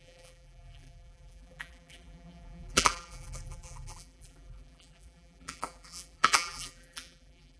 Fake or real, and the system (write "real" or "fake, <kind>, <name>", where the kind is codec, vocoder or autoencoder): fake, vocoder, BigVGAN v2